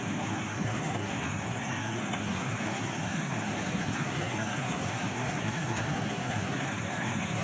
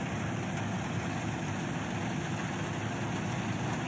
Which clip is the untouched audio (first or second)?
second